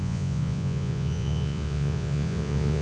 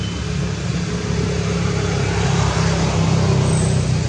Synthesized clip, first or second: first